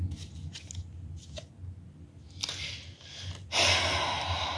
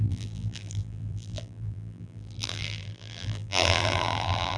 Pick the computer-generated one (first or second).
second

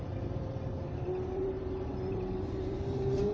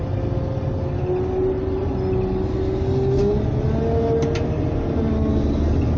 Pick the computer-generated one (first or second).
first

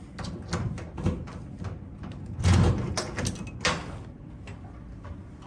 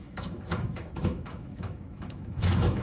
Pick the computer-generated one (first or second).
second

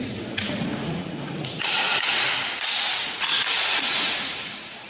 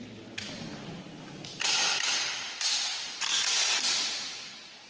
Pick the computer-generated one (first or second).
first